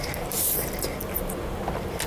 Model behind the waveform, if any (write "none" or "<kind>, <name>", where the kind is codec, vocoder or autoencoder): none